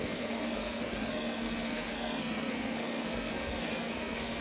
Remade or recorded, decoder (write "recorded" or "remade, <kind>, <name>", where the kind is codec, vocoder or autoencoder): remade, codec, SNAC